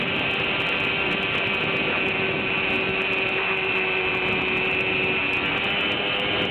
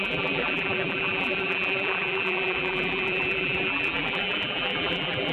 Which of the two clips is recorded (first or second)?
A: first